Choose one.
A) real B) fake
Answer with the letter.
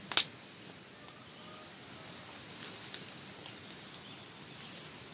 A